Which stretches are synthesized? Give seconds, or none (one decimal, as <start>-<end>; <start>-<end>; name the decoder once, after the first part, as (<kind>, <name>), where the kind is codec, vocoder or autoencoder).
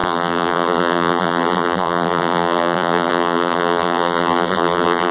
0.0-5.1 (vocoder, BigVGAN v2)